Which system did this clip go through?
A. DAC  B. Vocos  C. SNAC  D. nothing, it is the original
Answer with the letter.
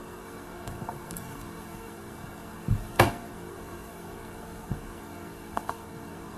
C